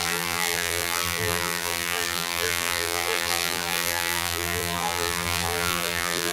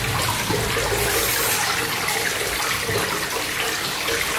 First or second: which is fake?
first